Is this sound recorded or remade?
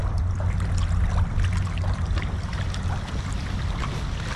recorded